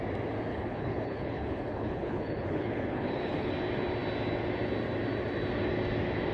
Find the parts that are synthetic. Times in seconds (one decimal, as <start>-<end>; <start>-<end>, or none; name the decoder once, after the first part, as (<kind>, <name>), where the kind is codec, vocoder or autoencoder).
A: 0.5-3.5 (codec, HILCodec)